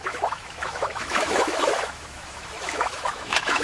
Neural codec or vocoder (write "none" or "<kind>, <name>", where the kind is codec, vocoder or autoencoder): autoencoder, DAC-VAE